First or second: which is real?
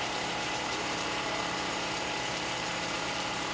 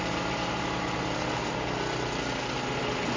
second